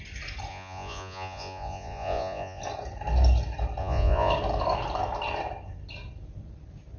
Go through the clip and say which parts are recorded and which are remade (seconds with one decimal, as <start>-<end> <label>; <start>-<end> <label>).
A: 0.0-0.5 recorded; 0.5-2.6 remade; 2.6-3.8 recorded; 3.8-4.3 remade; 4.3-7.0 recorded